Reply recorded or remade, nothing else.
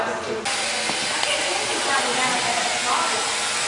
recorded